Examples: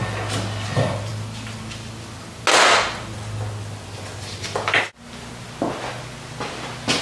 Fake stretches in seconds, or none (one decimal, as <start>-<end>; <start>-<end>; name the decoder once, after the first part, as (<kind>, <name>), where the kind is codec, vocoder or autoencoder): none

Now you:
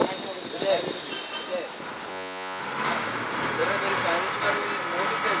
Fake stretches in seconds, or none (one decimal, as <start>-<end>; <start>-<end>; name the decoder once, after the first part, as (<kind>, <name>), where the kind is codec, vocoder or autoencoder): 2.1-2.6 (vocoder, Vocos)

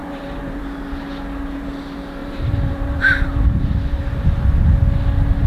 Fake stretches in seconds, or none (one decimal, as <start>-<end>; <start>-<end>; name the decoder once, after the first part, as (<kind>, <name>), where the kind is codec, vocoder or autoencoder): 0.0-0.6 (vocoder, BigVGAN v2); 2.2-4.4

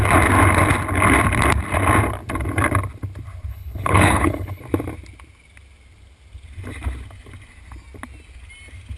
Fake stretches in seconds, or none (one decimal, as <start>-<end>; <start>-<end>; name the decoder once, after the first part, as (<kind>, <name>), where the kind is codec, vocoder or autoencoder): 3.5-4.6 (codec, HILCodec)

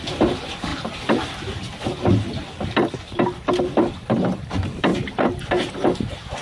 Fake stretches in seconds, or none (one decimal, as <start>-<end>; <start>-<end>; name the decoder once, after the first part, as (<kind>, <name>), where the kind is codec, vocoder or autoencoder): none

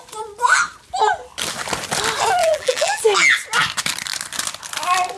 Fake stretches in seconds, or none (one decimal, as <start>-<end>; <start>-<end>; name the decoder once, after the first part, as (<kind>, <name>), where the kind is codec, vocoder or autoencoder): 2.4-3.0 (vocoder, BigVGAN v2)